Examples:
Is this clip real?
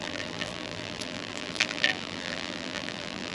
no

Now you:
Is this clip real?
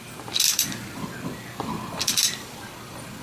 no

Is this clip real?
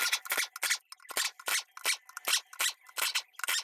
yes